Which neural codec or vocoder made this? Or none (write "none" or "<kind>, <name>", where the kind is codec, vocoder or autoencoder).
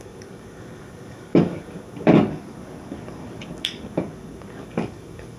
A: codec, DAC